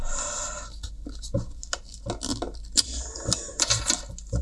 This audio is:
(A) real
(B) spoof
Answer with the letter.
A